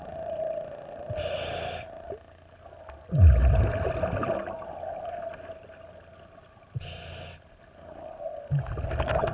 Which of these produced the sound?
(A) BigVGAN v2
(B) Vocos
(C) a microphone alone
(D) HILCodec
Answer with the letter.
C